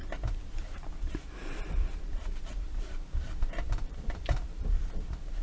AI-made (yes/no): yes